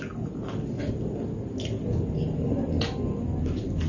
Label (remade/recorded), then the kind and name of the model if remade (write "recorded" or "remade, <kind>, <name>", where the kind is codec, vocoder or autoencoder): recorded